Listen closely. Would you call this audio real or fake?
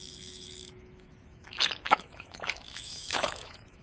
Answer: fake